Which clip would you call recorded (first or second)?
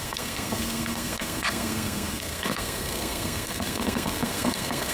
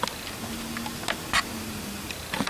second